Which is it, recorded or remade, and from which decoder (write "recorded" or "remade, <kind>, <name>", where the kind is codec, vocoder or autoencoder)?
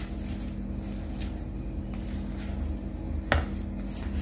recorded